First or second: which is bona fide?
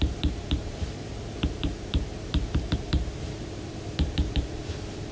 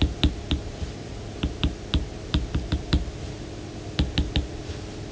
second